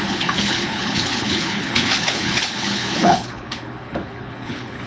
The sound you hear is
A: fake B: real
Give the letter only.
A